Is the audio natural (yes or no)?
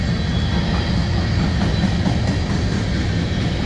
yes